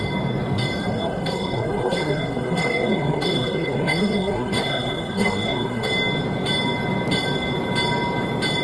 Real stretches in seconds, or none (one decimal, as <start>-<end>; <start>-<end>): 0.0-0.8; 5.9-8.6